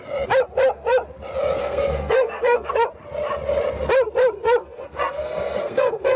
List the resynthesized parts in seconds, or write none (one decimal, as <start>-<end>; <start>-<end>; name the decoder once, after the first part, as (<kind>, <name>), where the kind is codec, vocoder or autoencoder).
1.6-2.7 (codec, SNAC); 4.6-6.2